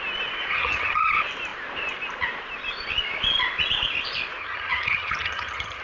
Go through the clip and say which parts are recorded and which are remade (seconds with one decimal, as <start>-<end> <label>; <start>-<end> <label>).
0.0-0.5 recorded; 0.5-1.1 remade; 1.1-4.4 recorded; 4.4-5.8 remade

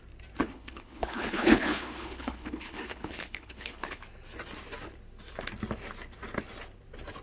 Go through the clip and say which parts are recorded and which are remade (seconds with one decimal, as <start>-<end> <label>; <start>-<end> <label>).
0.0-0.4 recorded; 0.4-4.0 remade; 4.0-7.2 recorded

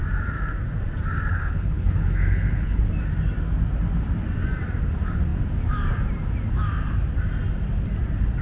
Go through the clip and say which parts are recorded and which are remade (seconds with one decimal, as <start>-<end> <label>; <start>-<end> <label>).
0.0-1.3 recorded; 1.3-2.8 remade; 2.8-8.4 recorded

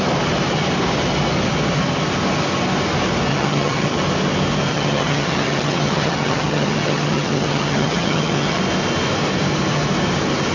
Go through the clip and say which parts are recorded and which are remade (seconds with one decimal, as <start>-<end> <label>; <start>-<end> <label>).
0.0-3.3 recorded; 3.3-4.0 remade; 4.0-4.7 recorded; 4.7-8.6 remade; 8.6-10.5 recorded

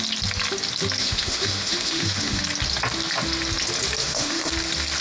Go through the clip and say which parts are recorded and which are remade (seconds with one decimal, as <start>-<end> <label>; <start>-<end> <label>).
0.0-1.0 recorded; 1.0-2.4 remade; 2.4-4.0 recorded; 4.0-4.5 remade; 4.5-5.0 recorded

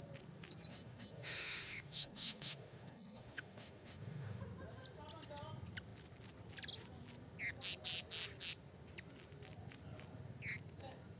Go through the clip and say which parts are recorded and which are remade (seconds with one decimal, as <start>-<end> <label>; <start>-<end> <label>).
0.0-0.7 recorded; 0.7-4.4 remade; 4.4-11.2 recorded

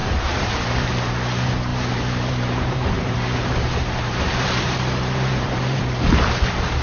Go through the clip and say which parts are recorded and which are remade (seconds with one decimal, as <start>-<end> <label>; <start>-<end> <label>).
0.0-0.9 remade; 0.9-1.7 recorded; 1.7-5.8 remade; 5.8-6.8 recorded

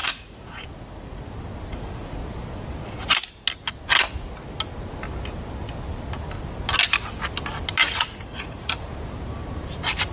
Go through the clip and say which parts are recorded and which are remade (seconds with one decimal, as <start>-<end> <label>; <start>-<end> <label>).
0.0-1.2 remade; 1.2-1.7 recorded; 1.7-2.2 remade; 2.2-7.8 recorded; 7.8-8.8 remade; 8.8-10.1 recorded